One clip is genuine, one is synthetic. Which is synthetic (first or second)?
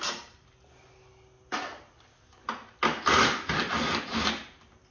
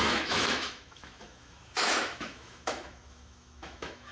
second